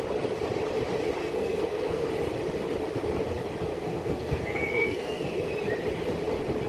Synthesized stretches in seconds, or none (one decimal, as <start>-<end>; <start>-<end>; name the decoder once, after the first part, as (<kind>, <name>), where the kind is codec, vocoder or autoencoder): 1.2-2.1 (codec, SNAC); 3.7-5.5